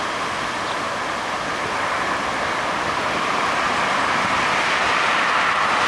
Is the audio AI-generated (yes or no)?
no